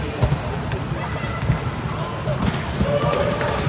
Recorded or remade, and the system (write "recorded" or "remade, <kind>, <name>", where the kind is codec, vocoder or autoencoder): recorded